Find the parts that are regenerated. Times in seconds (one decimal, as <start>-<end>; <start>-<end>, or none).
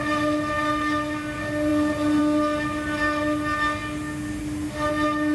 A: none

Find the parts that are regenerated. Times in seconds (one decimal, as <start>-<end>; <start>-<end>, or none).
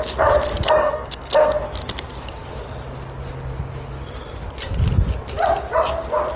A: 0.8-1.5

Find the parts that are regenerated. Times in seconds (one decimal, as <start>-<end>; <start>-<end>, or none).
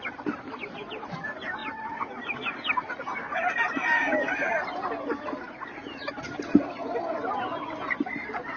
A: none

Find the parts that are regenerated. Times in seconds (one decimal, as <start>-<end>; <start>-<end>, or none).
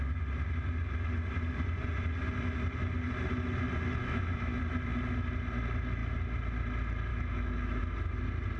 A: 4.0-4.6; 7.1-7.8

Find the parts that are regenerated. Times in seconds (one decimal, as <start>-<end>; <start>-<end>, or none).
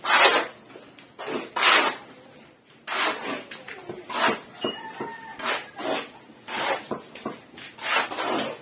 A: none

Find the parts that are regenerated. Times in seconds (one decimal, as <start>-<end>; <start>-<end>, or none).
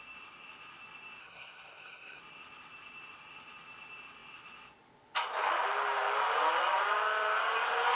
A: 1.2-2.2